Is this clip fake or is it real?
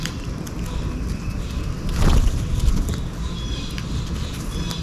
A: real